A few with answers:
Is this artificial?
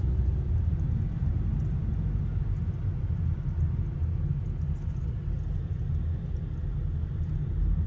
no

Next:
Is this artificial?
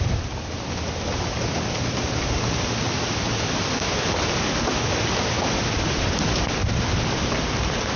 no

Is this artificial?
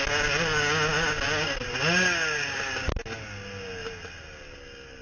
no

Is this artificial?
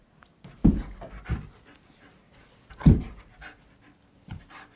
no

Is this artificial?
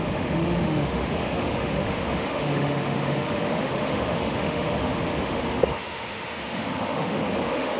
yes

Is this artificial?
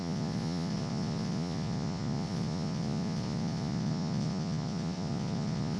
yes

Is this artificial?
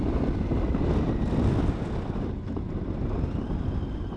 no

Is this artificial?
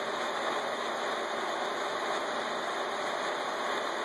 no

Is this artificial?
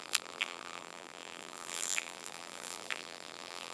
yes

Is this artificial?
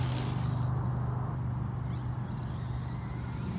no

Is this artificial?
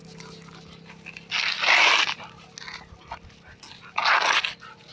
no